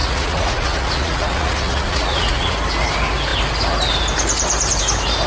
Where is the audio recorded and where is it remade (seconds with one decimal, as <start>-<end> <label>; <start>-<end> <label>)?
0.0-2.5 remade; 2.5-5.3 recorded

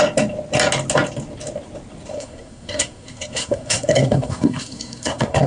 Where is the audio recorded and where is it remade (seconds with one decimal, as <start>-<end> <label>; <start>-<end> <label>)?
0.0-2.1 recorded; 2.1-5.5 remade